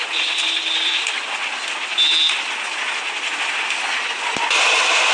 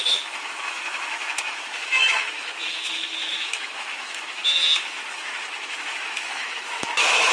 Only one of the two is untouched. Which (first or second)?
first